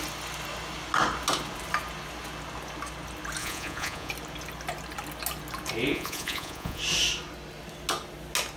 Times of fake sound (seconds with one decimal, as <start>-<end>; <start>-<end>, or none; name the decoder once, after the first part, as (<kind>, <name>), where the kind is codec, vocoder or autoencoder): 3.4-4.1 (vocoder, Vocos); 5.9-6.8